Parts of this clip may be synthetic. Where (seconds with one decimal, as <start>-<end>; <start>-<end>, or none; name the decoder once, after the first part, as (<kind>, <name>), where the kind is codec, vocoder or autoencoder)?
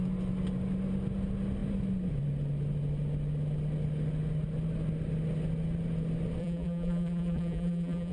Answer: 6.4-8.1 (vocoder, BigVGAN v2)